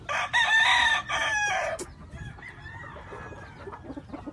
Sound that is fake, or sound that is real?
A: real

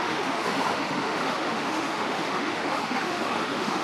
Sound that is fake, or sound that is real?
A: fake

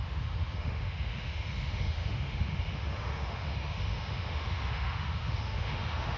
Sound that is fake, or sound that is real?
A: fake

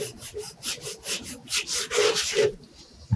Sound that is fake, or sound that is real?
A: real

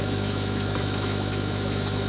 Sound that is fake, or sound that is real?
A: fake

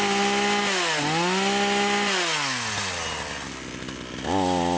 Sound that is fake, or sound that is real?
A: real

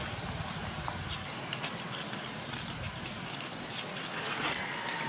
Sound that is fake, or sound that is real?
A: real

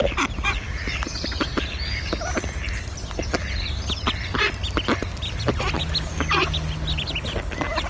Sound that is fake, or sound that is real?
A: real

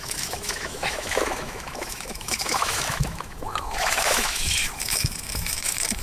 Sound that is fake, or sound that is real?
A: fake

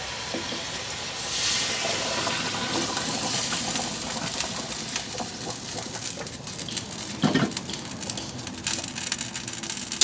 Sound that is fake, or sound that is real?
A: real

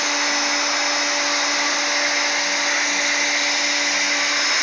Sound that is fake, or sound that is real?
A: real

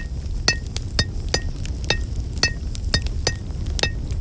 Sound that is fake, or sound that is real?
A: real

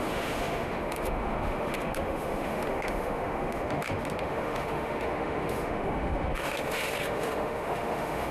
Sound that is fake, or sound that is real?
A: fake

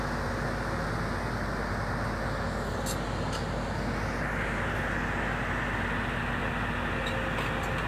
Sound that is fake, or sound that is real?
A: real